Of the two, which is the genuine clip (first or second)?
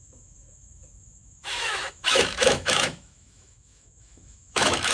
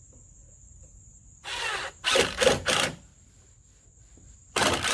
second